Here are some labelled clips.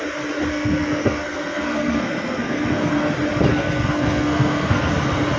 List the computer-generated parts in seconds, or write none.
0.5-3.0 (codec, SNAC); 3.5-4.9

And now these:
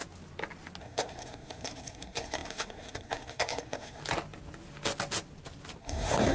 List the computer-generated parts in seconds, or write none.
0.8-4.0 (codec, SNAC); 5.8-6.3

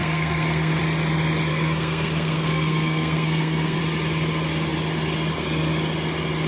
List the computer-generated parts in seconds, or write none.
0.0-0.8 (codec, SNAC); 1.5-3.8

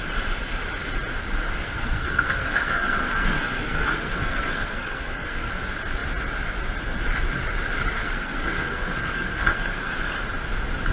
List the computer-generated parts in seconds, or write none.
1.6-5.5 (codec, SNAC); 8.0-9.9